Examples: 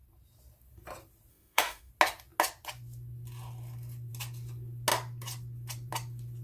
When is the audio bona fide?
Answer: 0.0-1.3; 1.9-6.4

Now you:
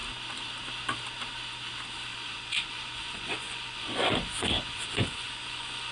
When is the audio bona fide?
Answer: 0.0-2.1

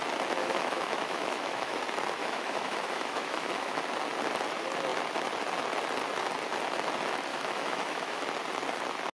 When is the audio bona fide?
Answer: 0.0-0.4; 1.8-2.2; 3.8-7.3; 8.2-9.2

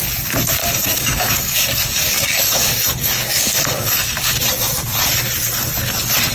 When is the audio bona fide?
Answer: 0.0-0.6; 4.4-6.3